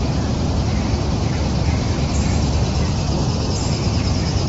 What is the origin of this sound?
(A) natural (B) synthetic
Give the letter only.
B